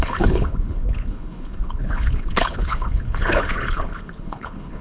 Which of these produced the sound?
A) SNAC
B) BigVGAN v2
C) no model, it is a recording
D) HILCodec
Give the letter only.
D